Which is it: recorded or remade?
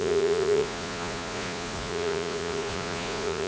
remade